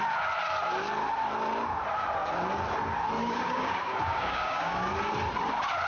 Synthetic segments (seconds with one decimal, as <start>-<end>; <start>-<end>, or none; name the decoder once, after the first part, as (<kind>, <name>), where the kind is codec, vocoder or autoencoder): 3.2-4.9 (codec, DAC)